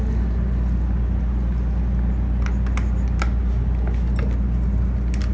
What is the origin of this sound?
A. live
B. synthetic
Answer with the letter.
A